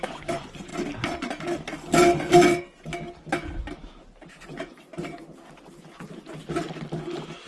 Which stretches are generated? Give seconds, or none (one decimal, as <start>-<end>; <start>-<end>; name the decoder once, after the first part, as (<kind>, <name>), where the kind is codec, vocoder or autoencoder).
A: 0.0-0.7 (vocoder, Vocos); 4.3-4.9